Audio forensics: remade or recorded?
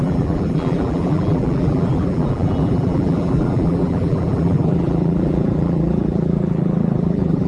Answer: remade